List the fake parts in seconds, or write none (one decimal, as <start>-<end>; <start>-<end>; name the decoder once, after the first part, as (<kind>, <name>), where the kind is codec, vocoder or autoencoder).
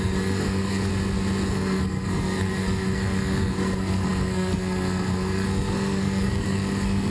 0.0-0.9 (codec, SNAC); 1.5-7.1